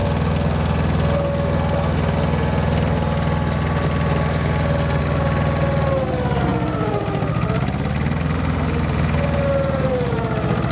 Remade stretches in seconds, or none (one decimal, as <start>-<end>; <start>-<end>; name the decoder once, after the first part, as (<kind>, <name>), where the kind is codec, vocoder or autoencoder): none